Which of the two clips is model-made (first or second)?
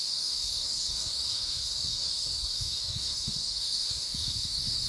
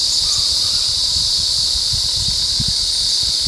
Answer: first